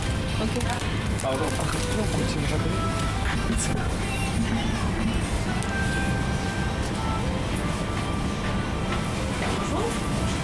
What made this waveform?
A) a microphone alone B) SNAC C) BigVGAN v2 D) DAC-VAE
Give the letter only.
A